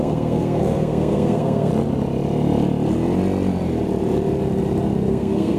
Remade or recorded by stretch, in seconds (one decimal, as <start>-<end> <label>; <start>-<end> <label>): 0.0-1.7 remade; 1.7-5.1 recorded; 5.1-5.6 remade